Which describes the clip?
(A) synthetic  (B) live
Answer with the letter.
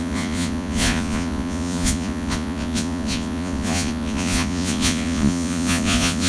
A